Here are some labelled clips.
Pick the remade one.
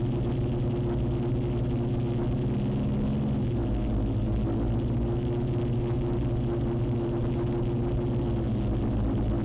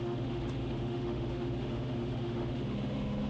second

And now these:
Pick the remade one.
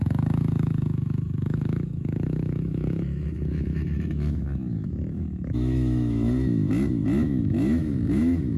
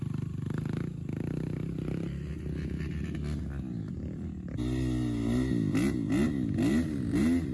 first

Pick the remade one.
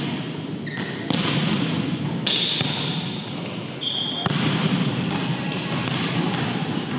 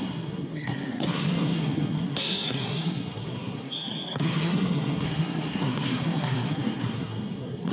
second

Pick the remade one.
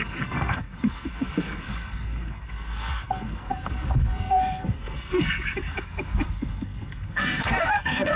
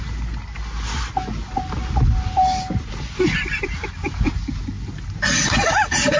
first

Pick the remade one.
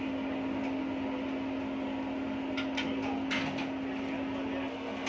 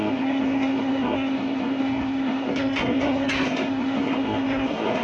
second